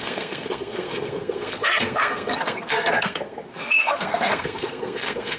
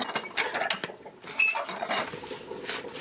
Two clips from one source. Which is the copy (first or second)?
first